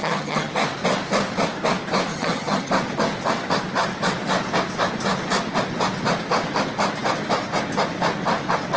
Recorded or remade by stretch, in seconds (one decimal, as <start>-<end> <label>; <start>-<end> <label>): 0.0-0.5 remade; 0.5-2.1 recorded; 2.1-2.7 remade; 2.7-8.8 recorded